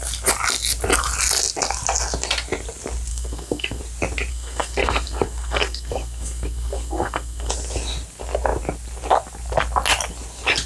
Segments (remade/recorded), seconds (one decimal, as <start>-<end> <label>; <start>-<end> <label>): 0.0-3.1 recorded; 3.1-3.8 remade; 3.8-4.3 recorded; 4.3-7.5 remade; 7.5-10.7 recorded